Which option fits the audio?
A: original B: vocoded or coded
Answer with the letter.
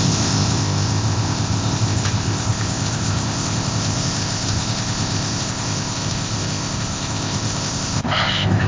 B